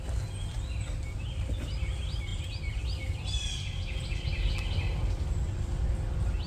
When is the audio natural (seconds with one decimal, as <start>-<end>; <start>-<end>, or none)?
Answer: 0.0-6.5